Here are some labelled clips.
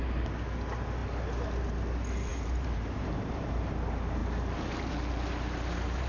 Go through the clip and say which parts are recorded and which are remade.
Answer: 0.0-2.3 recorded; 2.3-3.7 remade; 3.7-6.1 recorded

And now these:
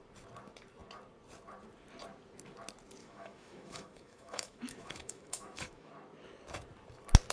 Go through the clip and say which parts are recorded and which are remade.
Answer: 0.0-3.0 recorded; 3.0-5.9 remade; 5.9-7.3 recorded

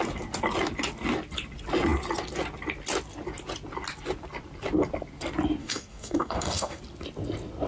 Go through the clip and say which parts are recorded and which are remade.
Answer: 0.0-5.6 recorded; 5.6-6.8 remade; 6.8-7.7 recorded

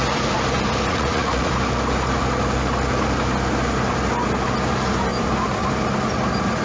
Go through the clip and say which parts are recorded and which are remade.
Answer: 0.0-0.9 recorded; 0.9-1.5 remade; 1.5-6.6 recorded

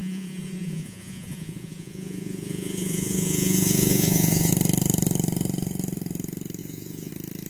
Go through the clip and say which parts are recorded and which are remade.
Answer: 0.0-4.5 remade; 4.5-6.6 recorded; 6.6-7.1 remade; 7.1-7.5 recorded

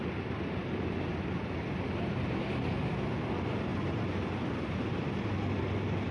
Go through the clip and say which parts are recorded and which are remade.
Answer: 0.0-6.1 recorded

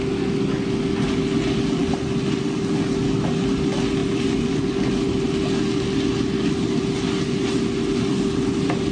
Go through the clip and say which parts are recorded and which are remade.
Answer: 0.0-8.9 recorded

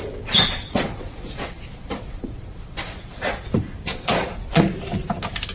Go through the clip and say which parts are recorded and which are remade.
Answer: 0.0-0.6 recorded; 0.6-3.5 remade; 3.5-3.9 recorded; 3.9-4.6 remade; 4.6-5.5 recorded